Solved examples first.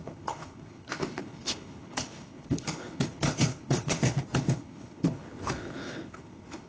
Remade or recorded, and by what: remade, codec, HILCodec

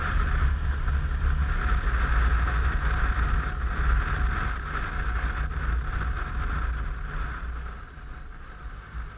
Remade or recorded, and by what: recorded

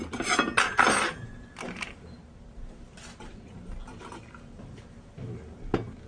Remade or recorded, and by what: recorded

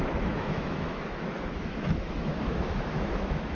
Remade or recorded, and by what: remade, autoencoder, DAC-VAE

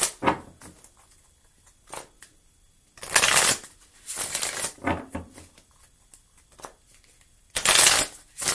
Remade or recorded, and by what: recorded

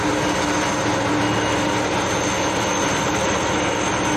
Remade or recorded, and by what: recorded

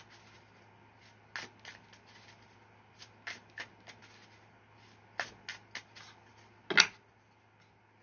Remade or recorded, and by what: recorded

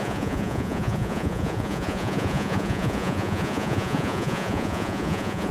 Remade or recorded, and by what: remade, vocoder, Vocos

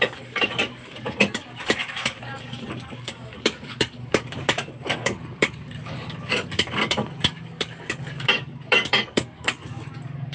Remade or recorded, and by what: remade, codec, DAC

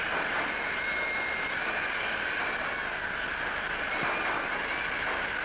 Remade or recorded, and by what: recorded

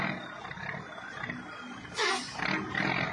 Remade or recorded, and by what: recorded